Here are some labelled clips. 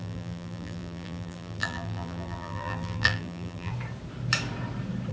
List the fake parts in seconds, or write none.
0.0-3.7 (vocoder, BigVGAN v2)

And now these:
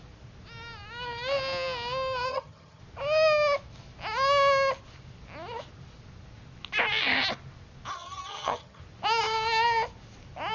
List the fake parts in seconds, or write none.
2.3-2.8 (vocoder, HiFi-GAN); 7.9-8.8